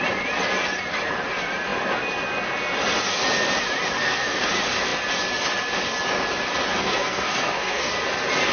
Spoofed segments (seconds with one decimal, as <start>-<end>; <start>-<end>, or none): 4.0-4.5; 6.8-7.9